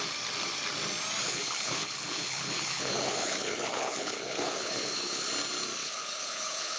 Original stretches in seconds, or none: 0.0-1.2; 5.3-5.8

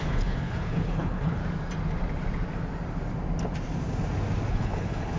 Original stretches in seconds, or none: 1.4-4.5

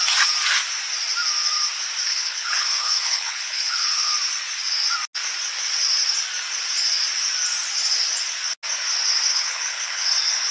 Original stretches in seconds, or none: 0.0-2.1; 4.1-9.3; 10.1-10.5

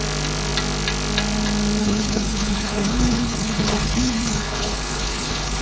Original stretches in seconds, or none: 0.0-1.8

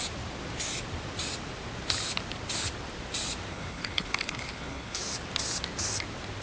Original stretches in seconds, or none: 0.0-3.5; 5.0-6.4

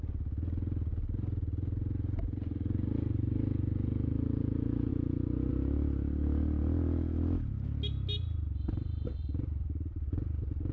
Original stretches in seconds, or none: 0.0-10.7

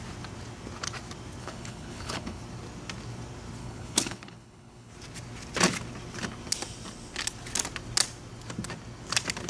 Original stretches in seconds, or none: 0.0-1.4; 2.4-3.6; 4.9-9.5

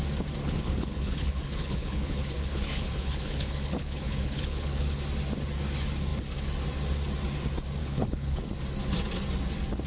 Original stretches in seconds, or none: 0.0-0.4; 5.0-7.8; 8.4-9.9